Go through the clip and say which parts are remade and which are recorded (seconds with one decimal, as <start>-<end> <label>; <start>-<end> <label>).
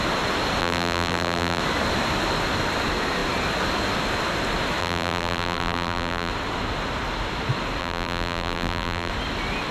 0.0-0.6 recorded; 0.6-1.6 remade; 1.6-4.8 recorded; 4.8-6.3 remade; 6.3-7.8 recorded; 7.8-9.1 remade; 9.1-9.7 recorded